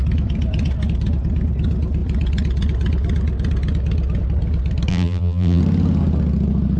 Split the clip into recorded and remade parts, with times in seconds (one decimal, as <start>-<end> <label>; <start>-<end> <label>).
0.0-4.9 recorded; 4.9-5.6 remade; 5.6-6.8 recorded